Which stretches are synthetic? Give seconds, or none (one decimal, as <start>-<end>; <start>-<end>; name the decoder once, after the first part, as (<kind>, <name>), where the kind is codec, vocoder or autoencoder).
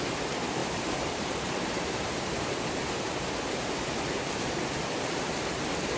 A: 0.6-4.2 (vocoder, BigVGAN v2)